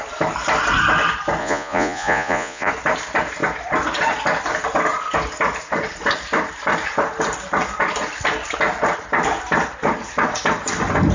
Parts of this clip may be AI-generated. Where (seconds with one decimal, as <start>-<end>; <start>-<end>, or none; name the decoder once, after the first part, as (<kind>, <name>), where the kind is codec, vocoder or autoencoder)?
1.4-2.7 (vocoder, Vocos)